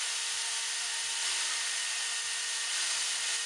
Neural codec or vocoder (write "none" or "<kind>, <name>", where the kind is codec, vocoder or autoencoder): none